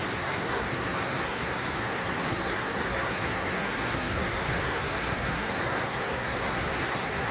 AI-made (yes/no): yes